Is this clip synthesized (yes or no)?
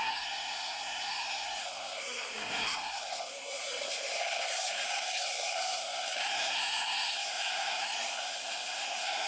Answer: yes